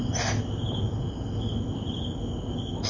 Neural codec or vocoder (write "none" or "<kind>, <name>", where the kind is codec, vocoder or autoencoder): none